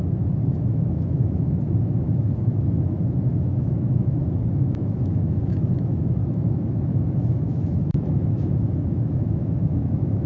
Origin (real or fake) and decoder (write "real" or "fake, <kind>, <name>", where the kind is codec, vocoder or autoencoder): fake, autoencoder, DAC-VAE